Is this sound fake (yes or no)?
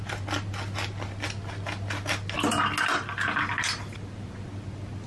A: no